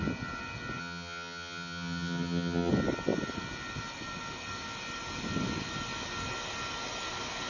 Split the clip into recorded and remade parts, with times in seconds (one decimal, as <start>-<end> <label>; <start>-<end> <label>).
0.0-0.8 recorded; 0.8-2.7 remade; 2.7-7.5 recorded